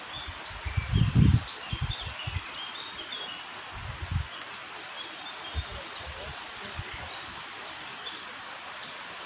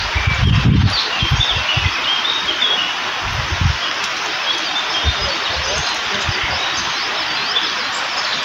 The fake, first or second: first